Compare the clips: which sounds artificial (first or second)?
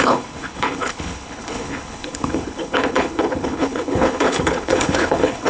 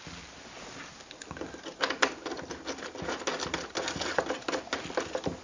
first